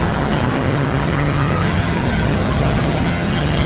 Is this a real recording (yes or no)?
no